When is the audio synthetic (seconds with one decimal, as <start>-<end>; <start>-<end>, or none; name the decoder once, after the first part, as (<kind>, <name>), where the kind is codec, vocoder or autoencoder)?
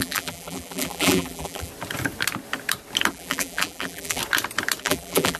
0.0-1.7 (vocoder, BigVGAN v2); 3.1-4.2; 4.8-5.4